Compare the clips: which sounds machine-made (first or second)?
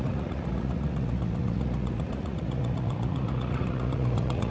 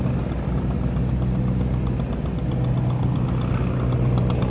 first